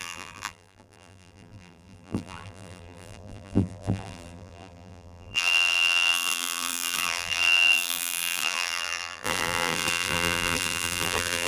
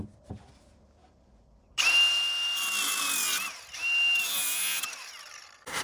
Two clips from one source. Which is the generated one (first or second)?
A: first